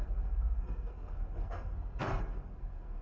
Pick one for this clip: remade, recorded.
remade